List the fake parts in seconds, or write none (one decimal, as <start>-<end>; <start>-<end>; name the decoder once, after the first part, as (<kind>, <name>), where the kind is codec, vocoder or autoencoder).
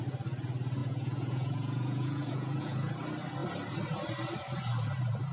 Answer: 0.8-2.9 (vocoder, Vocos)